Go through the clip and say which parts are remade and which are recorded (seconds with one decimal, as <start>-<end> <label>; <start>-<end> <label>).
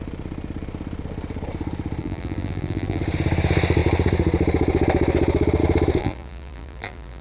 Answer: 0.0-2.0 recorded; 2.0-3.0 remade; 3.0-6.0 recorded; 6.0-7.2 remade